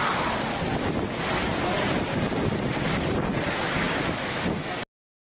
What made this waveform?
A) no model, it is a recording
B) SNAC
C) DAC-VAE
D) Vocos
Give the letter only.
A